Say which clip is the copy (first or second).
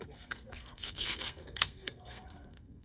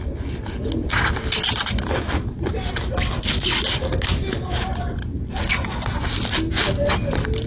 first